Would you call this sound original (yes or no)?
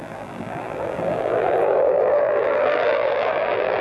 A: no